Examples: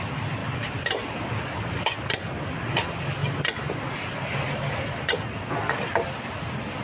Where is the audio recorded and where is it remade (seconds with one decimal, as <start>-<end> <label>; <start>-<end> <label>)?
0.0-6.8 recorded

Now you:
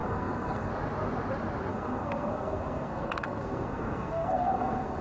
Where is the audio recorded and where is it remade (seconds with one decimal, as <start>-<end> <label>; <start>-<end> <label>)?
0.0-0.7 remade; 0.7-1.7 recorded; 1.7-5.0 remade

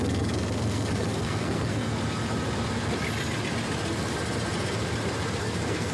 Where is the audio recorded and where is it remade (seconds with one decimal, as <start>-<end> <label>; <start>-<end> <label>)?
0.0-1.9 remade; 1.9-5.4 recorded; 5.4-5.9 remade

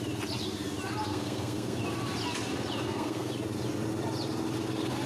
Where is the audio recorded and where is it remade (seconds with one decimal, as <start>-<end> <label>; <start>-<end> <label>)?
0.0-1.1 recorded; 1.1-1.8 remade; 1.8-2.8 recorded; 2.8-3.3 remade; 3.3-5.1 recorded